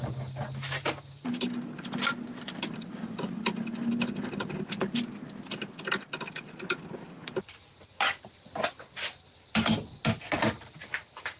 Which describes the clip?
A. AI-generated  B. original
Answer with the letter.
B